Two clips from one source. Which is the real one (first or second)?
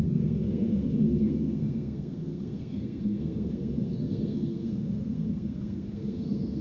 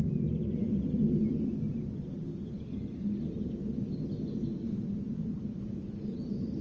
second